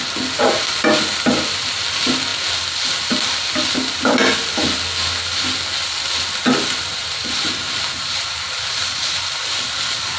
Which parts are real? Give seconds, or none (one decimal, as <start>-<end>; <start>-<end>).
0.0-6.9; 9.4-10.2